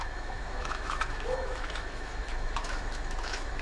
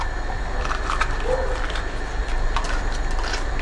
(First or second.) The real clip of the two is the second